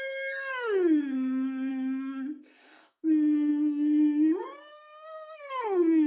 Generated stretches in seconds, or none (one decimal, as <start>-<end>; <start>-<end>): 0.0-1.7; 2.4-6.1